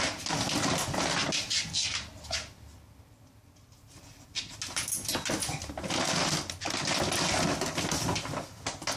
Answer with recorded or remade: recorded